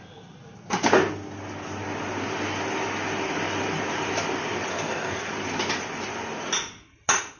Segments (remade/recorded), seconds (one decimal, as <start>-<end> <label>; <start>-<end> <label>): 0.0-4.7 recorded; 4.7-5.3 remade; 5.3-7.4 recorded